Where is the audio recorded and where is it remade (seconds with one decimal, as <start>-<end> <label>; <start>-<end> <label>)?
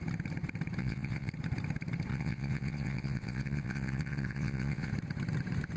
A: 0.0-0.8 recorded; 0.8-1.3 remade; 1.3-2.1 recorded; 2.1-4.9 remade; 4.9-5.8 recorded